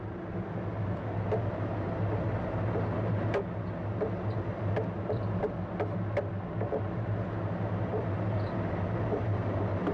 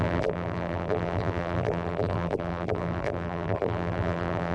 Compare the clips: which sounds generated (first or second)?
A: second